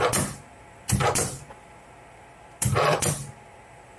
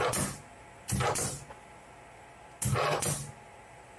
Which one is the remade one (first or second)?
first